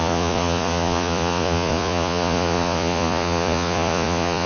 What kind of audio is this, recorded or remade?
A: remade